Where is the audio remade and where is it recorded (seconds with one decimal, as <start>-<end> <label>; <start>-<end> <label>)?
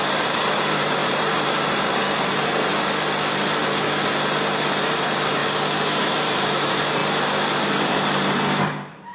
0.0-2.7 remade; 2.7-4.9 recorded; 4.9-5.4 remade; 5.4-6.0 recorded; 6.0-7.0 remade; 7.0-7.6 recorded; 7.6-9.1 remade